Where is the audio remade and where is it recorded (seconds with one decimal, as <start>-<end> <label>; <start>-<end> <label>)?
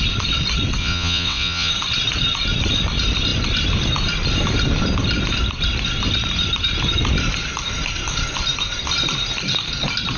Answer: 0.0-0.8 recorded; 0.8-1.7 remade; 1.7-10.2 recorded